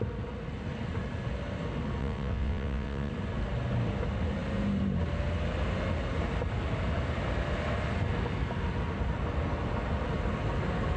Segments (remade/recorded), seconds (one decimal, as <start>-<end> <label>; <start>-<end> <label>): 0.0-2.0 recorded; 2.0-3.1 remade; 3.1-11.0 recorded